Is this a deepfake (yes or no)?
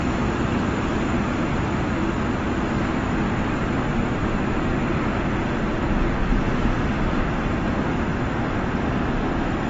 no